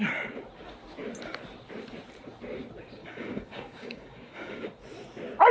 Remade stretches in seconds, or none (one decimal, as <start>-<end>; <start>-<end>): 3.0-4.6